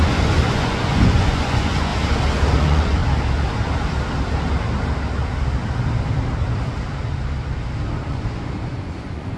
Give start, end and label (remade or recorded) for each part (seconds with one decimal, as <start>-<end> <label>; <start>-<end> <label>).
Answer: 0.0-1.9 remade; 1.9-2.5 recorded; 2.5-3.0 remade; 3.0-8.1 recorded; 8.1-9.4 remade